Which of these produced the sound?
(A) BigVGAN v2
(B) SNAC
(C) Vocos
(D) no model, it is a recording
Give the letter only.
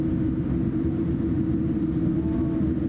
D